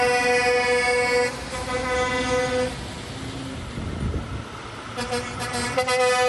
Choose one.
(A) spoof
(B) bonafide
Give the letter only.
B